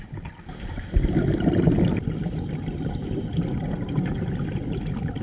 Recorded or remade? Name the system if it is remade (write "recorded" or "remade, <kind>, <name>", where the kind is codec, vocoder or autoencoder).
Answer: recorded